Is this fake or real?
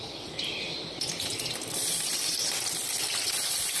real